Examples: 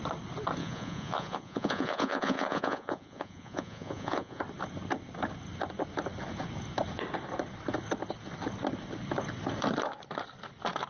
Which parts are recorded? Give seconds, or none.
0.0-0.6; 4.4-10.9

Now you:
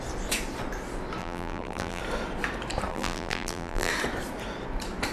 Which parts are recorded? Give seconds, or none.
0.0-1.2; 2.0-2.9; 3.9-5.1

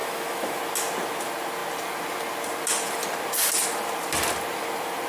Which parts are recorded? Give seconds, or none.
0.6-5.1

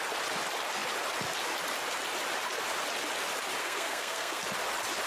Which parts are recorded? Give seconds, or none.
0.0-3.6; 4.4-5.1

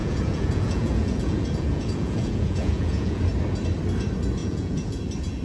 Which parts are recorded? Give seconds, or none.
3.2-4.4; 5.0-5.4

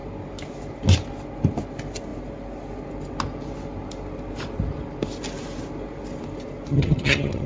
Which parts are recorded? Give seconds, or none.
0.0-6.7